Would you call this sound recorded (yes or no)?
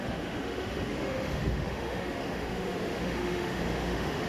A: no